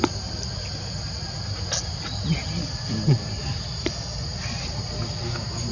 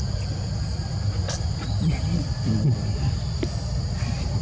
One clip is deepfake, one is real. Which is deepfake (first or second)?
second